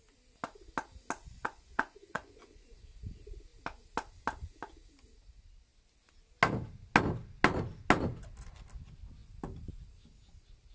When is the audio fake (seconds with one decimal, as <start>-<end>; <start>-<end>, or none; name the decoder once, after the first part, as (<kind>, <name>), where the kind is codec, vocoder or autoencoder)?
1.2-2.7 (vocoder, Vocos)